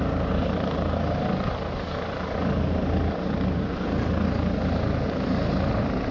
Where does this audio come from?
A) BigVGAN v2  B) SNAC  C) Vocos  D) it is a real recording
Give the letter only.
D